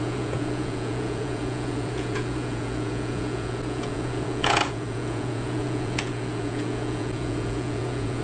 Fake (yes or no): yes